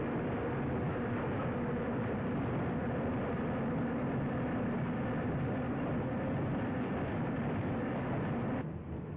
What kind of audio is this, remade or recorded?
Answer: recorded